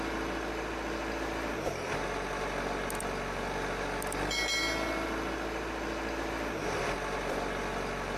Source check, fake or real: real